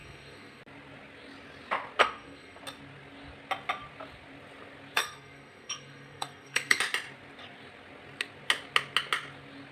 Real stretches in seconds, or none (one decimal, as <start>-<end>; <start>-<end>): 0.6-2.0; 2.6-5.0; 6.8-9.7